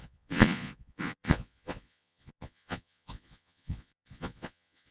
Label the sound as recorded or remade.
remade